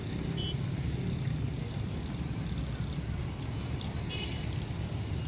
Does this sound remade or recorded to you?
recorded